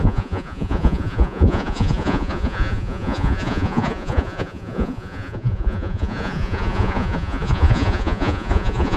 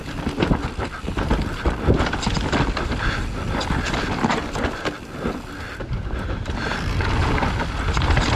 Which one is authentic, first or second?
second